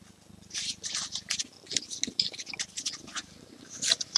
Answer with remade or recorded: recorded